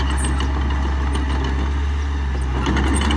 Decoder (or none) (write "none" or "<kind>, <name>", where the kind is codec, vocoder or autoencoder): none